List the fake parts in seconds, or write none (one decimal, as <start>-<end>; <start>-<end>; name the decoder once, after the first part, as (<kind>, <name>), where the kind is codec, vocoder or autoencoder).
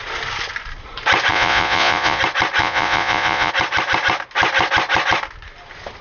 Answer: 1.3-2.2 (vocoder, Vocos); 2.6-3.5